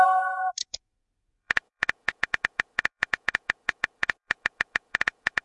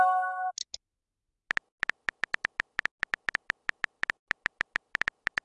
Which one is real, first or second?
second